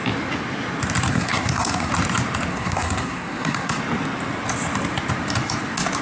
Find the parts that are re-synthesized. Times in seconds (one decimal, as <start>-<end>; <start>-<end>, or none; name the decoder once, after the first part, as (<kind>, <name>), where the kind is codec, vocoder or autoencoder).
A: 1.1-1.9 (codec, SNAC); 2.5-3.8